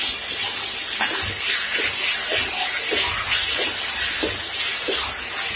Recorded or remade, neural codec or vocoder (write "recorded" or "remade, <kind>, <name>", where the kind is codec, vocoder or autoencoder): recorded